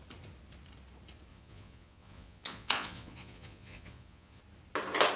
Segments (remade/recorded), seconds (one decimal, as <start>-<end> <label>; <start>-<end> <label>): 0.0-1.3 recorded; 1.3-4.4 remade; 4.4-5.2 recorded